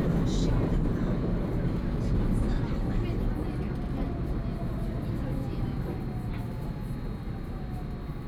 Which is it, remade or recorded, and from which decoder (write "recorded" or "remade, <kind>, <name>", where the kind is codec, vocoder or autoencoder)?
recorded